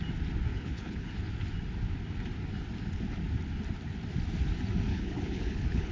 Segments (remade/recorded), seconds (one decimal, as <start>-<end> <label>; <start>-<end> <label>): 0.0-0.5 recorded; 0.5-1.1 remade; 1.1-4.9 recorded; 4.9-5.9 remade